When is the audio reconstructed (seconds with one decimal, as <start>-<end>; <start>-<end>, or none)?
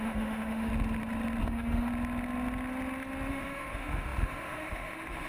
0.0-0.7; 1.4-1.9; 3.3-5.3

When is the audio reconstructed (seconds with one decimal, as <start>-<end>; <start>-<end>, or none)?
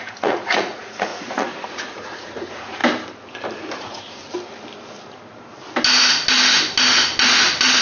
0.0-2.8; 3.8-4.2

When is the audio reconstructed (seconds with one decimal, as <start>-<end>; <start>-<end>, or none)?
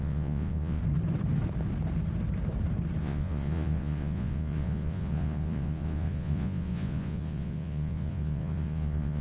0.0-0.8; 3.0-9.2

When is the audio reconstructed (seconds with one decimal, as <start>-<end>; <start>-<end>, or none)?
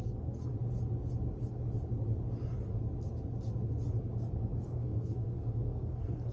0.0-0.5; 4.2-6.3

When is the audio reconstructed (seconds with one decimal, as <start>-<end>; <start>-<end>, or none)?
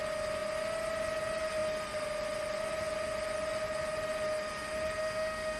5.0-5.6